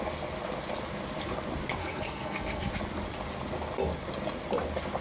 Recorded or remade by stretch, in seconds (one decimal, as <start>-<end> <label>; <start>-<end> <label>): 0.0-1.8 recorded; 1.8-2.7 remade; 2.7-5.0 recorded